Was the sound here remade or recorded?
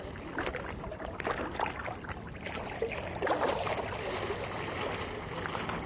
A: recorded